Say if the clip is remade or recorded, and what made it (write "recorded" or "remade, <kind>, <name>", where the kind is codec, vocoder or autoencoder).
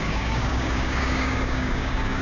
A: remade, codec, DAC